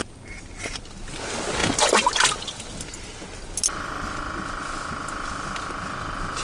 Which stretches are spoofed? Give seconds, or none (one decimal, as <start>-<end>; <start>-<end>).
none